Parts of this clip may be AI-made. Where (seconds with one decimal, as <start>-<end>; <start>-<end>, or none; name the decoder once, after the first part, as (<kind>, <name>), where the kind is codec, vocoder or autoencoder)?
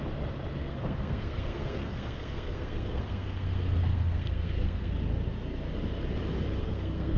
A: 0.6-4.9 (codec, SNAC); 6.6-7.2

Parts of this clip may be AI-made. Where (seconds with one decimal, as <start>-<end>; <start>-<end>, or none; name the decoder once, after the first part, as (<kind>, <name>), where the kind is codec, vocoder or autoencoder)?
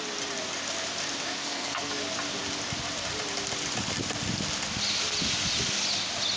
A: 1.4-1.9 (codec, SNAC)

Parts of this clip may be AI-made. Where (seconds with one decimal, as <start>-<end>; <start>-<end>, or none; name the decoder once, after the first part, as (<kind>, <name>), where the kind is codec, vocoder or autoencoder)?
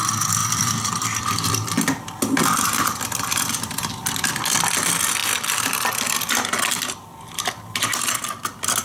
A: 0.4-1.5 (vocoder, BigVGAN v2); 5.2-5.9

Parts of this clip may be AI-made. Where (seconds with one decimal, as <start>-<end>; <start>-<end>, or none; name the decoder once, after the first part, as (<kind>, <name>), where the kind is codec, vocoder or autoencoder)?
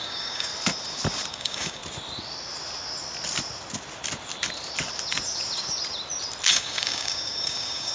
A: 0.0-0.5 (codec, DAC); 1.3-1.8; 6.5-7.9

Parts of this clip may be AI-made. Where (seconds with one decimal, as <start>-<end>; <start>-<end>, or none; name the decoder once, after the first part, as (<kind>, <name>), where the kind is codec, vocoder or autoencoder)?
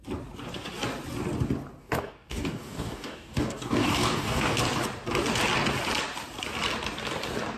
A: 1.8-4.6 (codec, DAC)